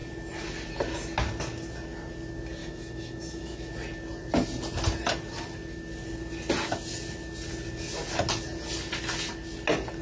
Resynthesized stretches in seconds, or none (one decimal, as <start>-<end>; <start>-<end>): 2.6-3.7